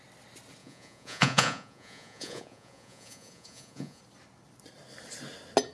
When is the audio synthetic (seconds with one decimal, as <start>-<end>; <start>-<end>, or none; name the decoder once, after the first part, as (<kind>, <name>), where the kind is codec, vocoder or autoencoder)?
0.6-4.0 (vocoder, Vocos)